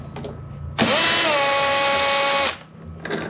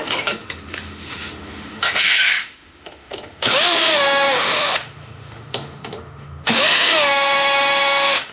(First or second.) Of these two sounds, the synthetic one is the second